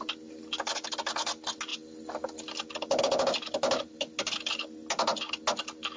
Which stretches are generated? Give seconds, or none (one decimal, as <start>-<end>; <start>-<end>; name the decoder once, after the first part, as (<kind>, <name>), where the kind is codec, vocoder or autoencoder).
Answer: none